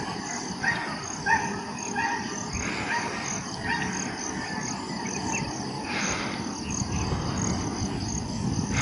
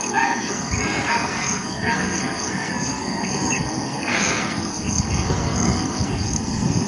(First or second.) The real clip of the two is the first